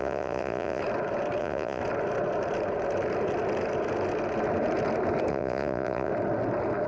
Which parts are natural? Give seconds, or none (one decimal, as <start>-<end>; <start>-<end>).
0.8-1.4; 1.8-5.3; 6.1-6.9